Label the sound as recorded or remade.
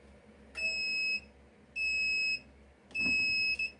recorded